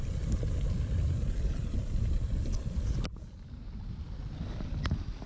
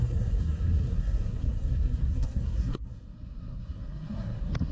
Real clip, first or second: first